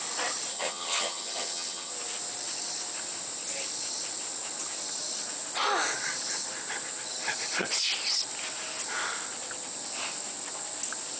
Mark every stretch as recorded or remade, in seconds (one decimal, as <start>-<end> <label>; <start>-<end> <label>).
0.0-0.5 recorded; 0.5-1.9 remade; 1.9-11.2 recorded